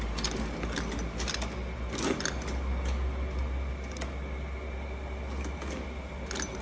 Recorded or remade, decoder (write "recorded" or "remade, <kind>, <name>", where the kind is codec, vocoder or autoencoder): recorded